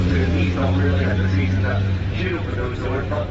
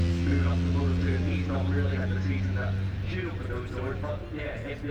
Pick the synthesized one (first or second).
first